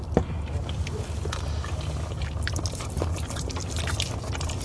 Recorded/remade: recorded